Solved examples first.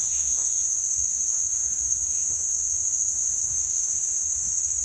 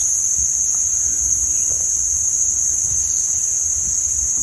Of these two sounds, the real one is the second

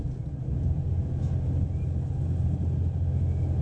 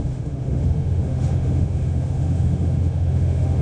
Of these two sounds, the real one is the first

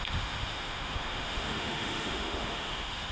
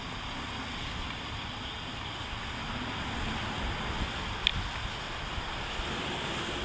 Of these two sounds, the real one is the second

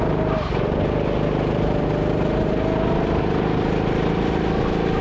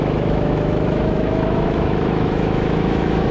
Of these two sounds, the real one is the first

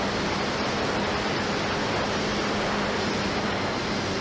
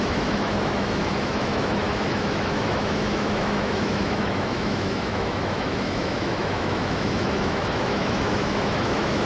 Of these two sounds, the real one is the first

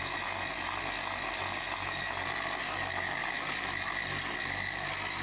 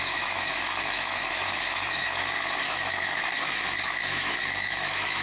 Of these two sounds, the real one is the first